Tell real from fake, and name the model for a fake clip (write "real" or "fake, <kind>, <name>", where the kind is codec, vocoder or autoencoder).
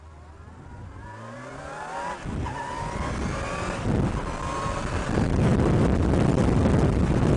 real